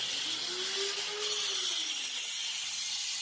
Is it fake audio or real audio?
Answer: real